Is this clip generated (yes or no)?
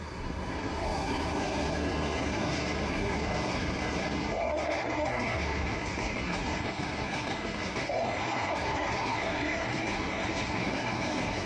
yes